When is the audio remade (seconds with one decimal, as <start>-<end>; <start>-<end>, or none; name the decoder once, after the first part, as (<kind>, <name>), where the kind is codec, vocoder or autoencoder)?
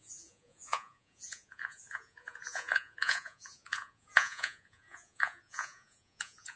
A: 0.0-6.6 (vocoder, Vocos)